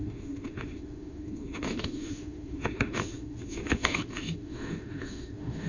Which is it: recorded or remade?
remade